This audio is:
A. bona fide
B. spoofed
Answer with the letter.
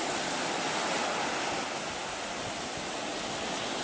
A